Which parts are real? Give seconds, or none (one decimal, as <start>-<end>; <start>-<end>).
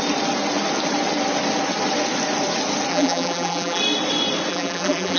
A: 0.0-2.9; 3.8-4.5